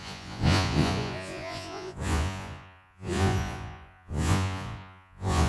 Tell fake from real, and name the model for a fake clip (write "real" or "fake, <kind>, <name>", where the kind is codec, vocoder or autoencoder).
fake, vocoder, Vocos